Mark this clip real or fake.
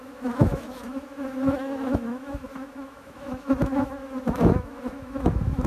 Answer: fake